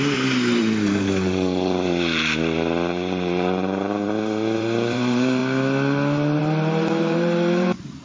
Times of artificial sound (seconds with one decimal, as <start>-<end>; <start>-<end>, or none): 0.0-5.4; 6.4-8.0